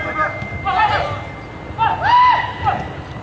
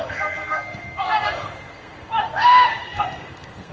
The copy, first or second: second